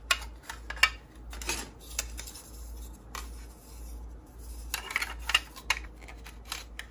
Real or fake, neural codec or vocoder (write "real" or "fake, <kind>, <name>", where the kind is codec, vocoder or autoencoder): real